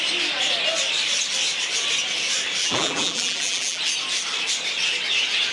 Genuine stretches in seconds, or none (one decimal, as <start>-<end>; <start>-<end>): 0.0-2.6; 3.8-5.5